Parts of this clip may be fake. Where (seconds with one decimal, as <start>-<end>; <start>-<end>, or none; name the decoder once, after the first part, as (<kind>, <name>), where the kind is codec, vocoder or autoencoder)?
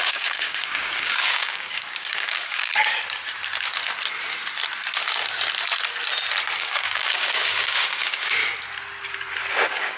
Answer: 0.0-2.7 (codec, DAC); 6.6-8.4; 9.5-10.0